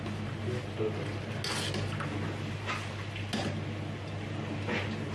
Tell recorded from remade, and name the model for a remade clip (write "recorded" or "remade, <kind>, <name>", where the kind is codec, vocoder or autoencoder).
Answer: recorded